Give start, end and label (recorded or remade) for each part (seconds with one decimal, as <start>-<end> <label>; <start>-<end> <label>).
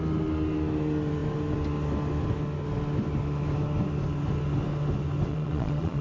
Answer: 0.0-5.3 recorded; 5.3-6.0 remade